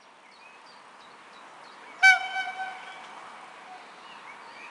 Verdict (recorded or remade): recorded